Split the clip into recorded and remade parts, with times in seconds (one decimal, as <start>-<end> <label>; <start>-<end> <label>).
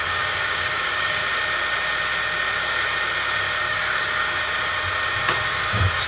0.0-1.2 remade; 1.2-3.6 recorded; 3.6-4.4 remade; 4.4-5.5 recorded; 5.5-6.1 remade